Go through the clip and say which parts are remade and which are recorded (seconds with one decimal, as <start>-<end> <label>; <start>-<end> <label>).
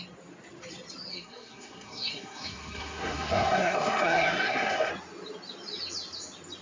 0.0-1.1 recorded; 1.1-4.9 remade; 4.9-6.6 recorded